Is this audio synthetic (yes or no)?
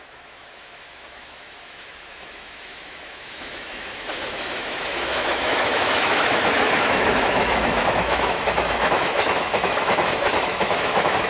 yes